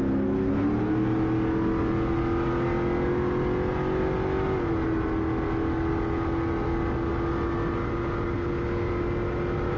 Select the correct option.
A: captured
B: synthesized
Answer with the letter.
A